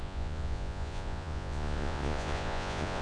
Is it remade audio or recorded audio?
remade